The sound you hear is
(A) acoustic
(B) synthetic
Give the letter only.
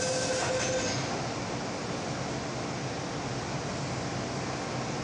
A